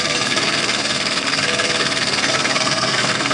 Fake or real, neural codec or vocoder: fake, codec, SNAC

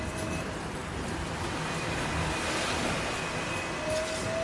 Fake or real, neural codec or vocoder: real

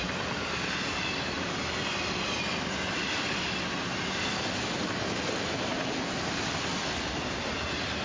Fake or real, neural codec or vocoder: real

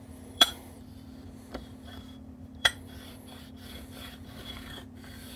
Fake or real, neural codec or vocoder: fake, vocoder, BigVGAN v2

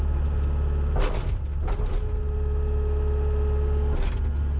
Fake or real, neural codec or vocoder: real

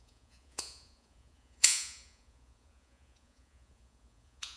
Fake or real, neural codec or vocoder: fake, vocoder, Vocos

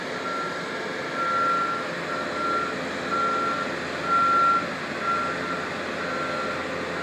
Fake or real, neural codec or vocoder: real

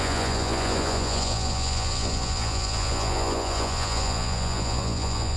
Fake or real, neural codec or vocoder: fake, vocoder, Vocos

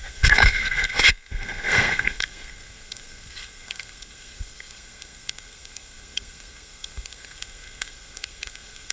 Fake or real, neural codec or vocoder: fake, codec, SNAC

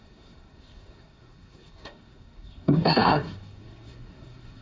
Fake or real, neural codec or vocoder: fake, codec, SNAC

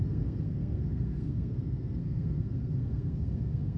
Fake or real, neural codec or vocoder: fake, codec, SNAC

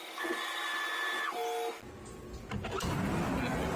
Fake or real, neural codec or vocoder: real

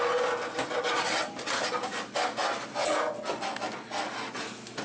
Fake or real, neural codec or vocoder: real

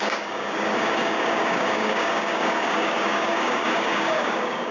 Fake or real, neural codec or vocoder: fake, codec, DAC